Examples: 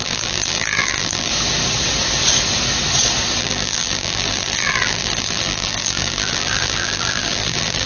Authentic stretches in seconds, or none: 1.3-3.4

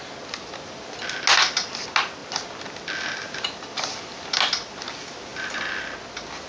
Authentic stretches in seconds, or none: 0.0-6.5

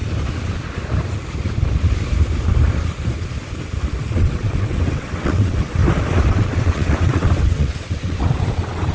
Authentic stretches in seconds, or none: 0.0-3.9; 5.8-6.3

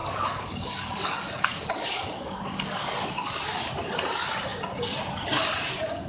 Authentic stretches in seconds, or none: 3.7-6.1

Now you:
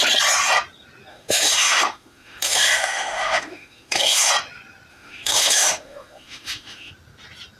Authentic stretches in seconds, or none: 0.0-1.1; 4.3-4.9; 6.9-7.6

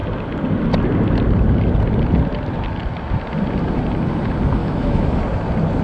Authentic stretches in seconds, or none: 0.0-4.6; 5.2-5.8